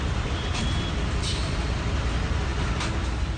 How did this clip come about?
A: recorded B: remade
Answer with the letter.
A